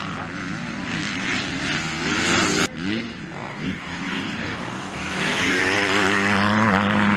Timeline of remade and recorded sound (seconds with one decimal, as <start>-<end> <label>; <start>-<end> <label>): 0.0-3.5 recorded; 3.5-5.6 remade; 5.6-7.2 recorded